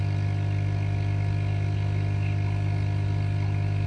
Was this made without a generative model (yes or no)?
yes